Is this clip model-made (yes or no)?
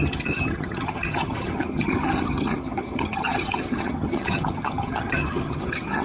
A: yes